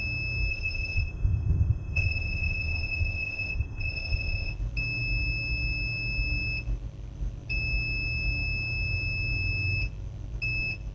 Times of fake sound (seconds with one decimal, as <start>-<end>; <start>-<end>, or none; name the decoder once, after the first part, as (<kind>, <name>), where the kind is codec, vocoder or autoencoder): 0.5-4.5 (codec, ZipCodec)